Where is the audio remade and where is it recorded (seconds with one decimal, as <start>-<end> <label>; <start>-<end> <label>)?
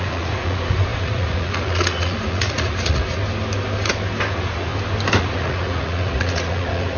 0.0-3.2 remade; 3.2-4.3 recorded; 4.3-4.7 remade; 4.7-5.2 recorded; 5.2-7.0 remade